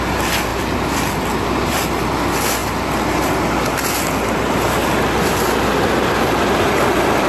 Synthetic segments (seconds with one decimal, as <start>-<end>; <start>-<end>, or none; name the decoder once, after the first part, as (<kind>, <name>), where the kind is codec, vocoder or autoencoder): none